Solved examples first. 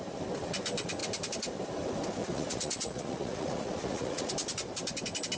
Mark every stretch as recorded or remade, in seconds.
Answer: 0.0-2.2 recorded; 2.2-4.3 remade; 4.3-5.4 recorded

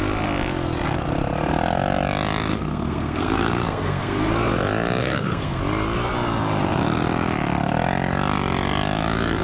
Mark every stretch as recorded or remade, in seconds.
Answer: 0.0-2.5 recorded; 2.5-4.3 remade; 4.3-5.0 recorded; 5.0-5.6 remade; 5.6-9.4 recorded

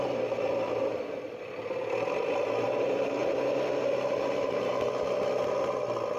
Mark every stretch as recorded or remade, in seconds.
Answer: 0.0-6.2 recorded

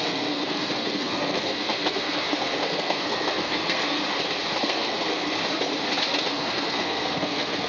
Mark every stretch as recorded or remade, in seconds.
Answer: 0.0-4.0 remade; 4.0-4.6 recorded; 4.6-5.4 remade; 5.4-6.2 recorded; 6.2-7.7 remade